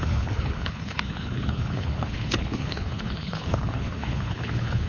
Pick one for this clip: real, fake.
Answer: fake